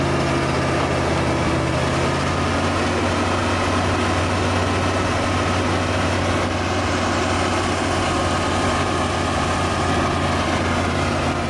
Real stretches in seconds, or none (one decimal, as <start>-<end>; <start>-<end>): 0.0-11.5

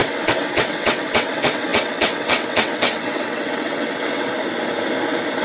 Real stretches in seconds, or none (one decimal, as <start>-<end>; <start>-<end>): 4.3-5.4

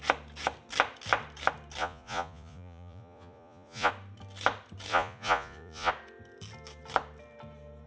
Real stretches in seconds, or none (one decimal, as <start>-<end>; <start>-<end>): 0.0-1.8; 3.9-4.9; 5.9-7.9

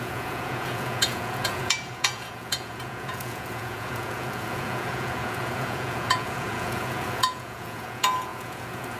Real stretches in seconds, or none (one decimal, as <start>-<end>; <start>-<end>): none

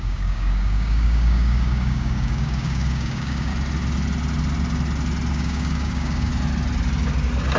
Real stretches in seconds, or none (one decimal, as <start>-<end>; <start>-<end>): 3.5-5.3; 6.3-7.6